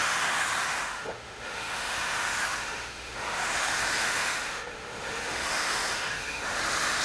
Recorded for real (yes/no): no